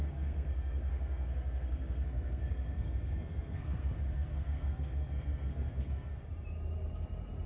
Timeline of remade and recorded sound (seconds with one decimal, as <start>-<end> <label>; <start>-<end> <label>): 0.0-6.1 remade; 6.1-7.5 recorded

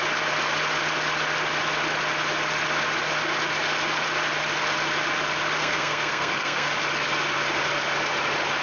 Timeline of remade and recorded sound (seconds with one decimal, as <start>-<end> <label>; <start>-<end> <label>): 0.0-5.6 recorded; 5.6-6.7 remade; 6.7-8.6 recorded

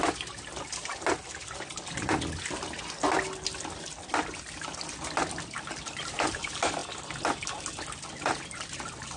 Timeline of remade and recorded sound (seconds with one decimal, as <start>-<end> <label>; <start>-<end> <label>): 0.0-9.2 recorded

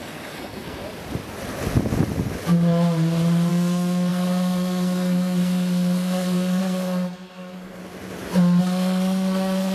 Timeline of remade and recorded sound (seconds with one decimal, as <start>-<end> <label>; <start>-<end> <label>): 0.0-0.8 remade; 0.8-3.5 recorded; 3.5-7.8 remade; 7.8-8.6 recorded; 8.6-9.7 remade